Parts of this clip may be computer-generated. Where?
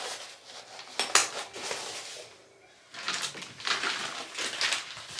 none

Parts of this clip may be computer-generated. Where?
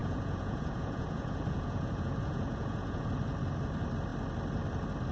0.0-3.1 (vocoder, Vocos)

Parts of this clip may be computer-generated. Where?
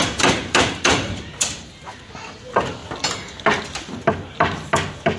none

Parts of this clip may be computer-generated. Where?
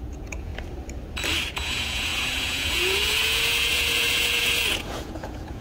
0.0-0.5 (vocoder, Vocos); 1.5-5.6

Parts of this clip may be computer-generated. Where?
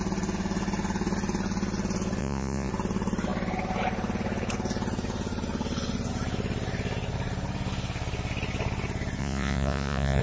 2.2-2.7 (vocoder, Vocos); 9.2-10.2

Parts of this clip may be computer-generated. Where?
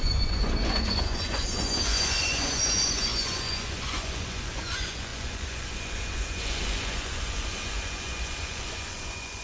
0.0-9.4 (vocoder, Vocos)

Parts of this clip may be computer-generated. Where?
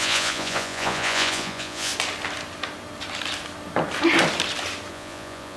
0.0-1.9 (vocoder, Vocos); 4.9-5.6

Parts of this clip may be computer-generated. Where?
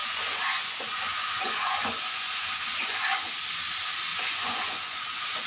0.0-3.3 (vocoder, Vocos); 4.1-5.0